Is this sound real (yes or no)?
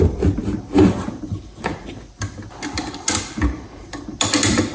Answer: yes